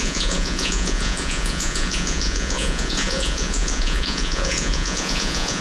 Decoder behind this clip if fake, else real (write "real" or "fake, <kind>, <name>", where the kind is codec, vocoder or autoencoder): fake, vocoder, Vocos